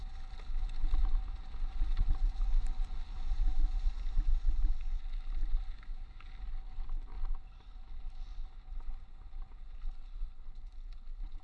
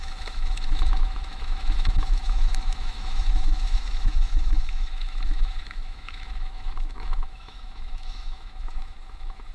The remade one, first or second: second